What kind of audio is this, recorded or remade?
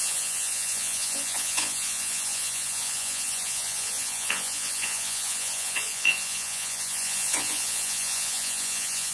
remade